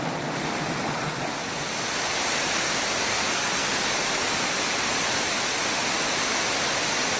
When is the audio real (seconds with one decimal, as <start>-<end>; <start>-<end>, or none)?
0.0-3.1; 3.8-7.2

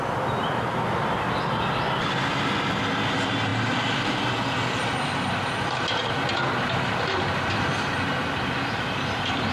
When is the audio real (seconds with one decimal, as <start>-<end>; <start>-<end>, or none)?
0.0-9.5

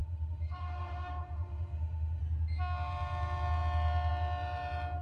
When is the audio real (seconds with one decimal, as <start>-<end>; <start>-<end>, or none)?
2.2-5.0

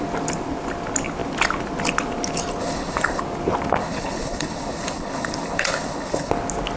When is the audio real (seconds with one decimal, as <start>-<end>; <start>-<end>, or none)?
0.0-2.6; 3.2-3.8; 6.3-6.8

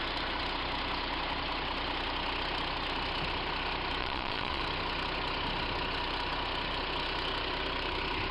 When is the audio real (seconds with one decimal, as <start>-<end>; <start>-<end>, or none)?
0.0-4.0; 4.6-8.3

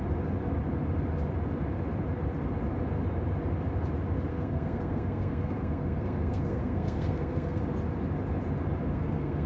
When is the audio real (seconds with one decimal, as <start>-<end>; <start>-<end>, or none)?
0.0-4.3; 7.6-8.9